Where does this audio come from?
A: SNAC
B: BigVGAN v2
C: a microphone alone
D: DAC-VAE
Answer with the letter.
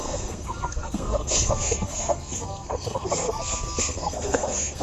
A